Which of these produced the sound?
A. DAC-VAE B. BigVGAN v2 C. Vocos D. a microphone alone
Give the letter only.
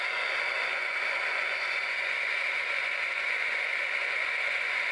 C